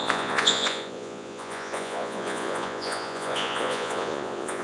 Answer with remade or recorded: remade